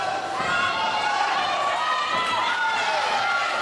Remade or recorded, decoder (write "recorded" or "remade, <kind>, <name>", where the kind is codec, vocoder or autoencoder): recorded